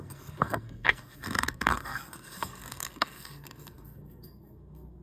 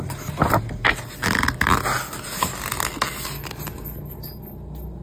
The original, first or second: second